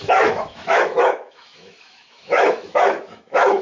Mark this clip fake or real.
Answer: fake